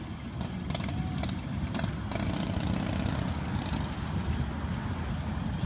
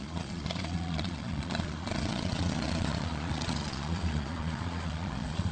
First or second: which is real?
first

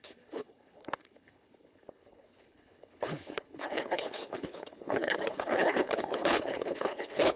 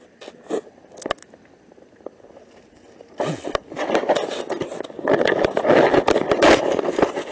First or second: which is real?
second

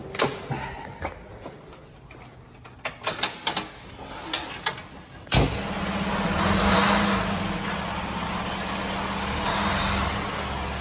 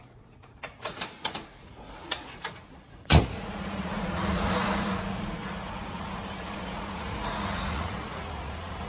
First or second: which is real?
first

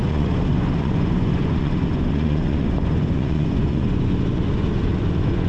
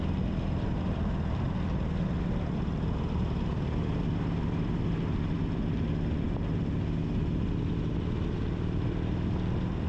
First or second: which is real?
second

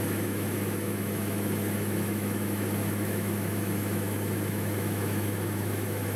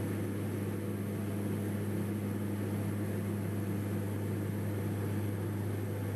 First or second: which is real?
second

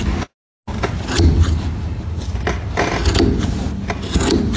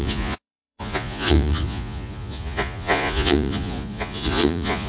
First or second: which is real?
first